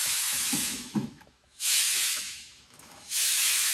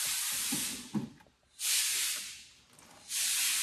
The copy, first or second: first